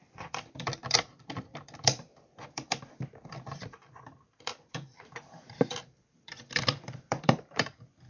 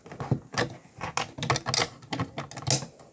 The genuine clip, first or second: second